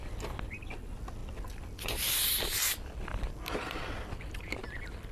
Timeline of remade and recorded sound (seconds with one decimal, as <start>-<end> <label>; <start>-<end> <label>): 0.0-5.1 recorded